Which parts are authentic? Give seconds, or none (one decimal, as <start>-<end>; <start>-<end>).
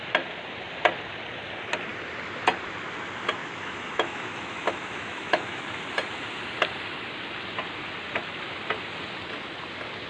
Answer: 0.0-3.4; 5.6-10.1